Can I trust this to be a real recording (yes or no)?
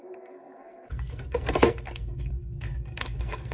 no